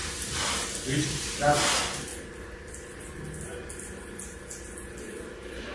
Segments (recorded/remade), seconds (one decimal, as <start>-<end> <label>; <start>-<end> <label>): 0.0-5.7 recorded